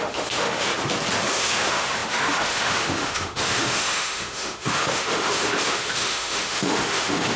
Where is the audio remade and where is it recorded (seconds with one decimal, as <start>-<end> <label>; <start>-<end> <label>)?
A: 0.0-0.7 remade; 0.7-1.3 recorded; 1.3-7.4 remade